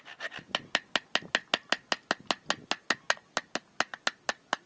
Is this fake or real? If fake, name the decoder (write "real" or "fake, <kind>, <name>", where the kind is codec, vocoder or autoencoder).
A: real